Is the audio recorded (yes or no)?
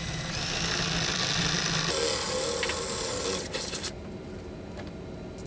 yes